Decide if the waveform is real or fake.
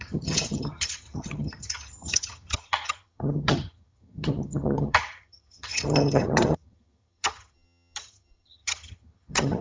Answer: fake